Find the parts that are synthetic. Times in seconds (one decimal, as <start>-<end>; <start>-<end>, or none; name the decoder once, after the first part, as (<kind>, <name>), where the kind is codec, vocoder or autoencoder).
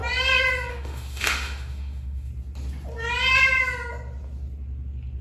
0.7-2.3 (autoencoder, DAC-VAE)